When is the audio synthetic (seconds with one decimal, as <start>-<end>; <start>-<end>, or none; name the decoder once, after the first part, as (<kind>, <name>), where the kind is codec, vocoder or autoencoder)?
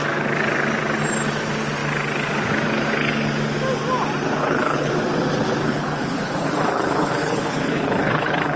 4.4-4.9 (codec, HILCodec); 5.6-8.6